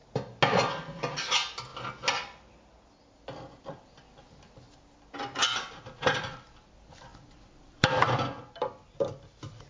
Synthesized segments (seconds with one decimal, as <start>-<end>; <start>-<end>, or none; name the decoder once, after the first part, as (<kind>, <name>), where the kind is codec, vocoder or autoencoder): 1.0-1.7 (vocoder, BigVGAN v2); 5.2-9.7